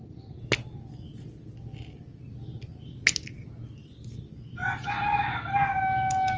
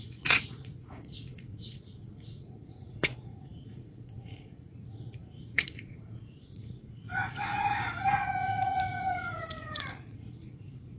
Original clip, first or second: first